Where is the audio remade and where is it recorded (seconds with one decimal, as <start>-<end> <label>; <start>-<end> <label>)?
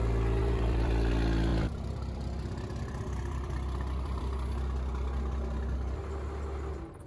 0.0-0.4 recorded; 0.4-1.1 remade; 1.1-1.5 recorded; 1.5-4.2 remade; 4.2-7.1 recorded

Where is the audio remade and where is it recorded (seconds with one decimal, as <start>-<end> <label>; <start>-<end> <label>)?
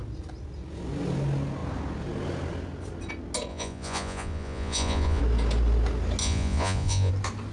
0.0-3.5 recorded; 3.5-5.2 remade; 5.2-6.2 recorded; 6.2-7.1 remade; 7.1-7.5 recorded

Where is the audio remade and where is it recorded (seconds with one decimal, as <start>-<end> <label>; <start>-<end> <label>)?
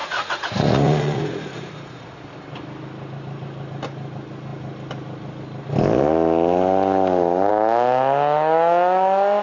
0.0-2.1 remade; 2.1-9.4 recorded